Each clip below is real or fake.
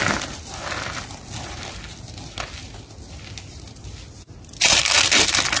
real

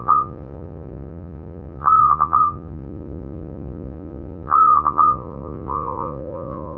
fake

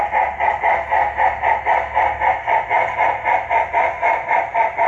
real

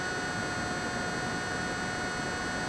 real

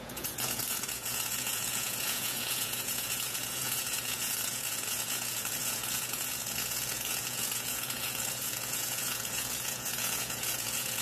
fake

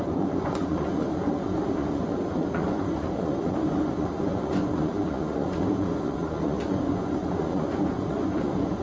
fake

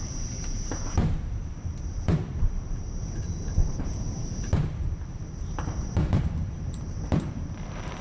fake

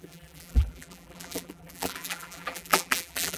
fake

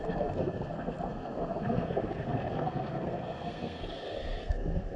fake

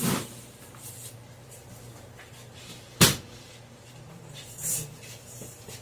fake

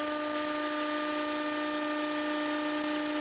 real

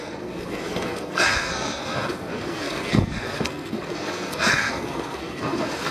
fake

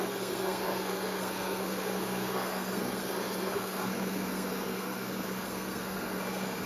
fake